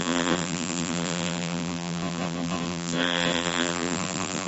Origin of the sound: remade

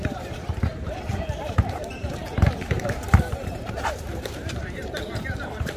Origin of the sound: remade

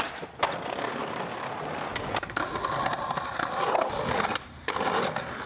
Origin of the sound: recorded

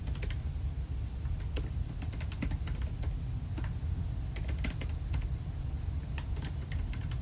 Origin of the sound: recorded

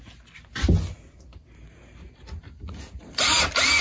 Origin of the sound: recorded